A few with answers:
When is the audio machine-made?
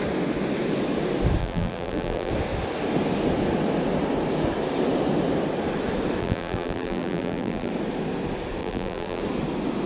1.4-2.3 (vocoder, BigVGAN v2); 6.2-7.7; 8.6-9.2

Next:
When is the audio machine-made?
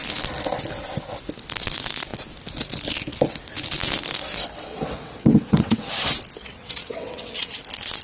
4.7-5.9 (vocoder, WaveNeXt); 6.4-7.6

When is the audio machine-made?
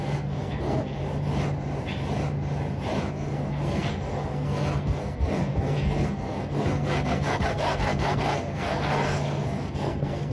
0.0-1.0 (codec, SNAC); 3.1-10.3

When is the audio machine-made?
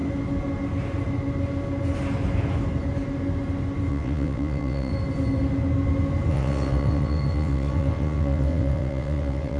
3.9-4.9 (vocoder, WaveNeXt); 6.3-9.6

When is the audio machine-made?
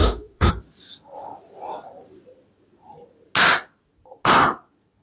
0.0-0.5 (autoencoder, DAC-VAE)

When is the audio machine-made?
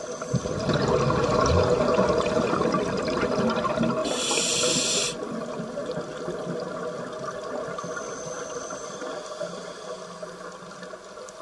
4.0-4.8 (vocoder, BigVGAN v2)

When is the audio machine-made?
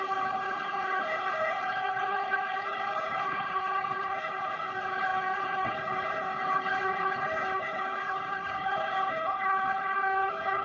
0.0-10.6 (codec, HILCodec)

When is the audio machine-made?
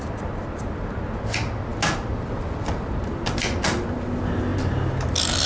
none